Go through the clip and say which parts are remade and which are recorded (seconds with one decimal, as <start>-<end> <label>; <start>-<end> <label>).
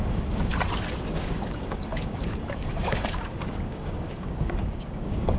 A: 0.0-0.5 remade; 0.5-1.1 recorded; 1.1-5.4 remade